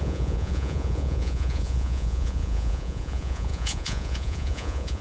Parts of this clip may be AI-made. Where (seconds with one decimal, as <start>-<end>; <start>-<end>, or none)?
0.0-5.0